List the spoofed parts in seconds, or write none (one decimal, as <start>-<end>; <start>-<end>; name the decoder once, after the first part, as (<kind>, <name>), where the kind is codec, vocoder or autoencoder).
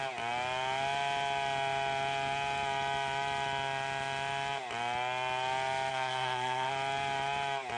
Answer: 5.9-6.7 (codec, SNAC)